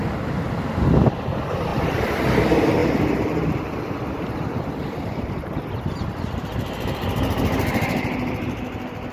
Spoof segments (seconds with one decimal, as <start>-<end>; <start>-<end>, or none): 0.0-0.8; 1.7-2.4; 2.8-5.3